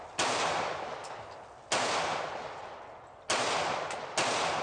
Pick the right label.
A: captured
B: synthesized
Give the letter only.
A